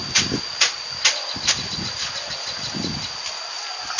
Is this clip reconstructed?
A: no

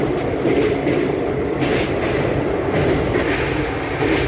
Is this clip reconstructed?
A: no